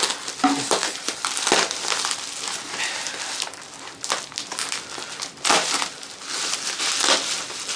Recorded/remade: recorded